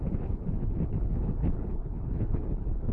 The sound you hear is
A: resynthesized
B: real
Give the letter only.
A